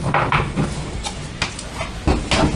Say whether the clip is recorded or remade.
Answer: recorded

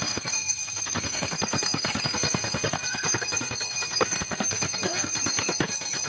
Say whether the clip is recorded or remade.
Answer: remade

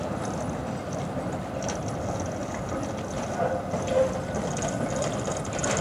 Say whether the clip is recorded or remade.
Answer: recorded